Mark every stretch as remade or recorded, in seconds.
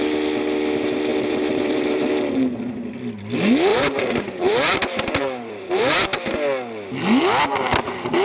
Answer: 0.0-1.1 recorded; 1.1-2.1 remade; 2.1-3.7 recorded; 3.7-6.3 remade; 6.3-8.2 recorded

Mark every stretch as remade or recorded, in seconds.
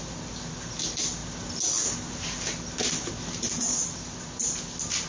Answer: 0.0-3.7 recorded; 3.7-5.1 remade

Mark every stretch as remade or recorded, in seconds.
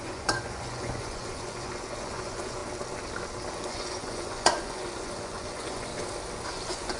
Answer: 0.0-2.6 remade; 2.6-3.5 recorded; 3.5-5.9 remade; 5.9-6.5 recorded; 6.5-7.0 remade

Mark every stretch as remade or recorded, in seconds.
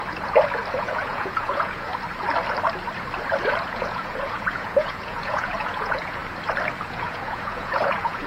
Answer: 0.0-0.8 recorded; 0.8-1.9 remade; 1.9-3.6 recorded; 3.6-6.2 remade; 6.2-6.8 recorded; 6.8-8.3 remade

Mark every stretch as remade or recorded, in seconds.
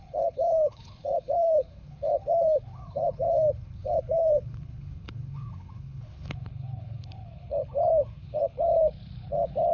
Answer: 0.0-9.7 remade